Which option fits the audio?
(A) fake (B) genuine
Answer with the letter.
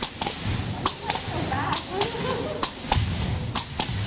B